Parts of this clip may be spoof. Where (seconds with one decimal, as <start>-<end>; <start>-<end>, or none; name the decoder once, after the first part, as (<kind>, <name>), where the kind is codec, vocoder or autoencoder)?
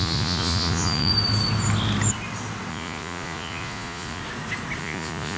0.0-1.1 (vocoder, Vocos); 2.7-4.2; 4.8-5.4